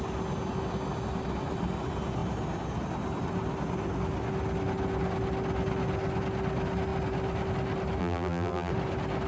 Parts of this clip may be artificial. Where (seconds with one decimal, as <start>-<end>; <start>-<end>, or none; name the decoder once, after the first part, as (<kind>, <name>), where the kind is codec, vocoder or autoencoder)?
8.0-8.7 (vocoder, BigVGAN v2)